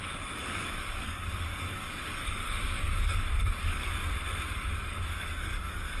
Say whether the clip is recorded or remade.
remade